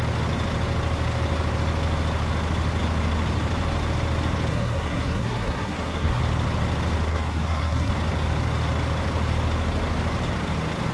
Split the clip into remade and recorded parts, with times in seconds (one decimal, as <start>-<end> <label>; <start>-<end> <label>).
0.0-4.5 recorded; 4.5-6.2 remade; 6.2-7.1 recorded; 7.1-7.9 remade; 7.9-10.9 recorded